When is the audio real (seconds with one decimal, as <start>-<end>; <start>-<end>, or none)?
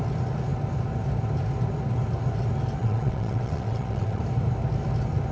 0.0-2.8; 4.2-5.3